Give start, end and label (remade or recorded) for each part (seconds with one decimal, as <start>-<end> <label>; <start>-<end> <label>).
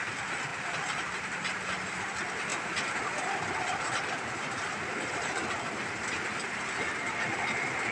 0.0-0.5 recorded; 0.5-1.2 remade; 1.2-2.5 recorded; 2.5-5.6 remade; 5.6-7.9 recorded